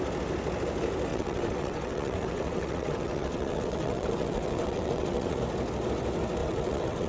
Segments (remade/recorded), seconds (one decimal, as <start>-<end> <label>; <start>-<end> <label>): 0.0-1.1 recorded; 1.1-5.4 remade; 5.4-6.4 recorded; 6.4-7.1 remade